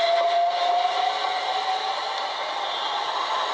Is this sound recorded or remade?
recorded